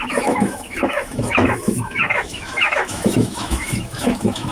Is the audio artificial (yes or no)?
yes